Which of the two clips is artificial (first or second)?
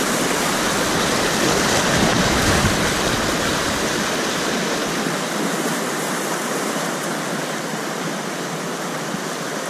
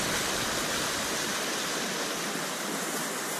first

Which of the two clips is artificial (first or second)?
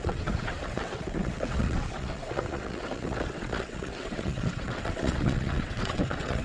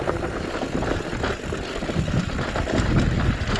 first